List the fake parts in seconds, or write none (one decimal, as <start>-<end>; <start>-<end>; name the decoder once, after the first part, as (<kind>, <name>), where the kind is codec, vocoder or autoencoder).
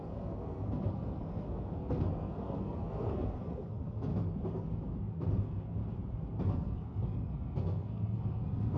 0.0-4.1 (codec, SNAC); 5.0-5.8; 6.4-8.8